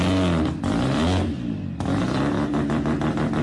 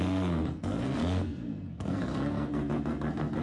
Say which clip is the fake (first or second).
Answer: second